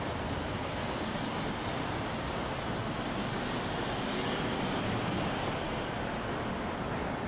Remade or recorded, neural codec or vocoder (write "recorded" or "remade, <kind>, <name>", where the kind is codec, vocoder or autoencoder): recorded